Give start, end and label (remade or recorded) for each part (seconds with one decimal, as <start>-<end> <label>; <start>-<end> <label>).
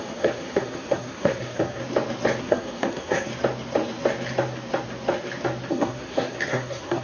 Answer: 0.0-1.8 remade; 1.8-2.4 recorded; 2.4-3.3 remade; 3.3-5.7 recorded; 5.7-7.0 remade